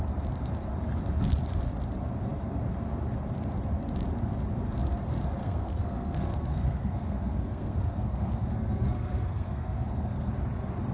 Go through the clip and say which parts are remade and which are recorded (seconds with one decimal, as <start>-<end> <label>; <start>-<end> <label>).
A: 0.0-5.4 recorded; 5.4-10.3 remade; 10.3-10.9 recorded